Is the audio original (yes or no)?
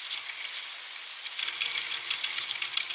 yes